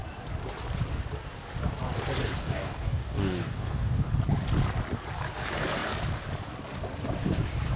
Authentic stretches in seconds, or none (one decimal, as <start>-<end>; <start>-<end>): 0.0-2.4; 4.1-7.8